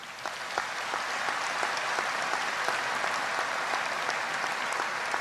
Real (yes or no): yes